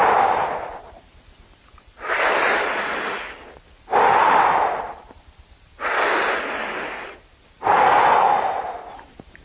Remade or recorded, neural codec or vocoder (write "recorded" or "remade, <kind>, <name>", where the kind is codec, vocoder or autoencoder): recorded